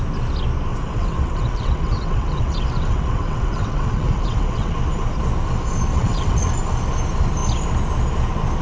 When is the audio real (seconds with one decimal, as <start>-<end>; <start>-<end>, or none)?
0.0-0.7; 4.7-5.9; 6.5-8.6